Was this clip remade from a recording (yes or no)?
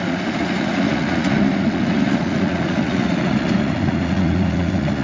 yes